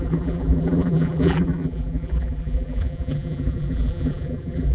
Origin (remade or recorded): remade